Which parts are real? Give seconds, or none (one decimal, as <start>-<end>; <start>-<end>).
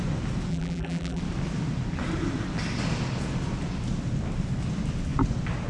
0.0-0.5; 1.2-5.7